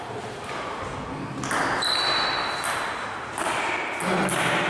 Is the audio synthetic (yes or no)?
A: no